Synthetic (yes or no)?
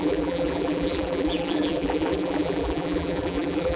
yes